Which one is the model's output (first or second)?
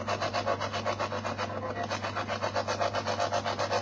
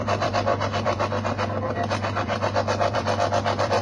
second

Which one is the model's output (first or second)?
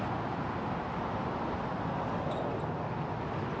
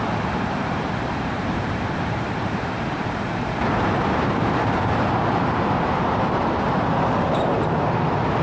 second